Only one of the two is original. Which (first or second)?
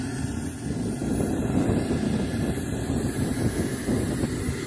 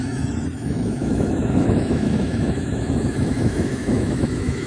first